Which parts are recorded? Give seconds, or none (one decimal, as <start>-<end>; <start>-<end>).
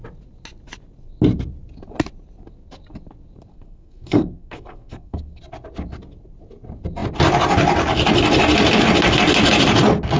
0.0-3.5; 5.4-10.2